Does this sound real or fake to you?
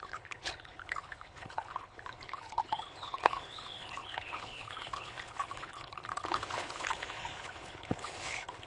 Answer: fake